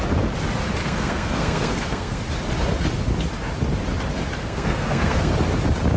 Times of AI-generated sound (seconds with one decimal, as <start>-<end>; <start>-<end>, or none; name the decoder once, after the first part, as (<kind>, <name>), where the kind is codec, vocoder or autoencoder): 0.8-2.2 (codec, SNAC); 4.4-5.3